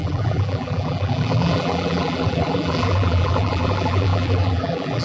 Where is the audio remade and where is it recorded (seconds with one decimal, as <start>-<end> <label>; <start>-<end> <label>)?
0.0-5.0 remade